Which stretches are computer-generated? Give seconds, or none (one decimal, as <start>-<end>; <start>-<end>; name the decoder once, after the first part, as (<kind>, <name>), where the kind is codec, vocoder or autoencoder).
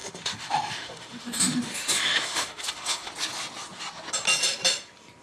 0.0-3.1 (autoencoder, DAC-VAE)